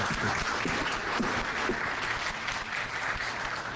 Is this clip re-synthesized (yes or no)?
no